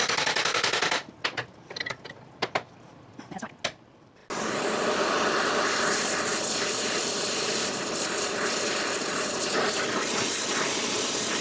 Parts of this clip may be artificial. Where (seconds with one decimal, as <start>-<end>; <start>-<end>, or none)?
none